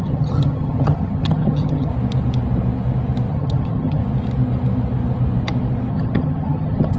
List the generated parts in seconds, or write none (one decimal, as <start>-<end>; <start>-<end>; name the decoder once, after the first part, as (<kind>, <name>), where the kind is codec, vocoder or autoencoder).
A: 0.0-1.9 (vocoder, HiFi-GAN); 3.3-4.0; 5.9-7.0